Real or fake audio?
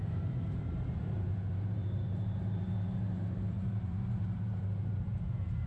fake